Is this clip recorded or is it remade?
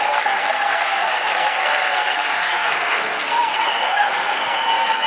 remade